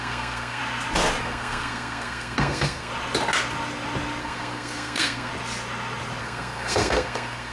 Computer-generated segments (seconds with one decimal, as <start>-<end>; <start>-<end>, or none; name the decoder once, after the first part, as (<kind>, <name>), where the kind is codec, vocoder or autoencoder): 0.0-0.6 (codec, SNAC); 1.2-2.9; 4.2-5.3; 6.2-7.5